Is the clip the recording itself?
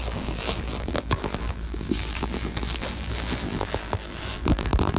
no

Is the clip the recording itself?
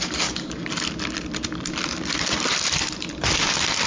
no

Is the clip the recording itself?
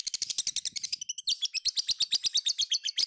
yes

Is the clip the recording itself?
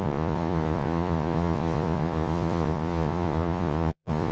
no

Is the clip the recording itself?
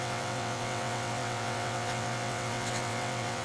no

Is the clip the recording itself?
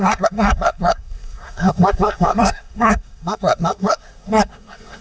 no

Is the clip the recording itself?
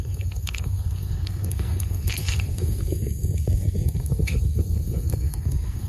no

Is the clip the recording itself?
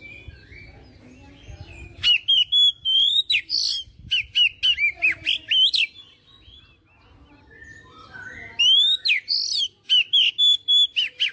yes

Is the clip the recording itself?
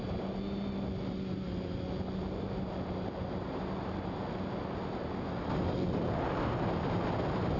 yes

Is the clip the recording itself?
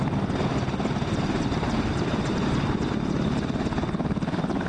yes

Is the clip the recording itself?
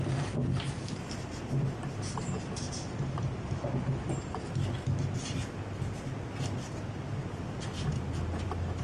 yes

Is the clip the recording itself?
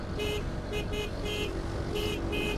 yes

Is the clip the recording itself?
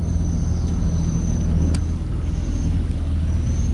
yes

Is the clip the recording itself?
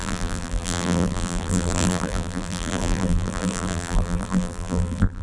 no